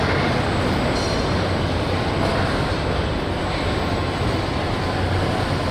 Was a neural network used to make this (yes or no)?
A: no